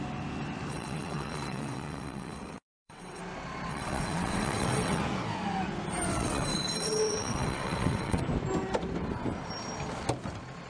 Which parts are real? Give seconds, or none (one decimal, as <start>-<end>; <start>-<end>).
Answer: 0.0-0.7; 3.2-3.7; 5.0-6.1; 8.2-10.7